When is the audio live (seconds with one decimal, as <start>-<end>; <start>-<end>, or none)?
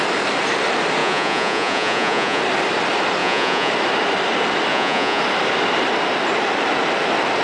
0.0-1.0; 2.4-3.2; 3.7-4.7; 5.2-7.4